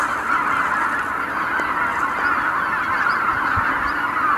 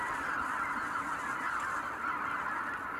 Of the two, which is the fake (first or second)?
second